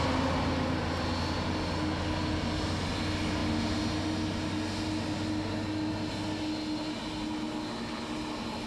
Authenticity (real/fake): real